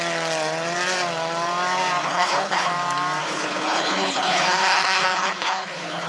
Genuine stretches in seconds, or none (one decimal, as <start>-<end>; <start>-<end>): 0.0-2.0; 2.7-3.2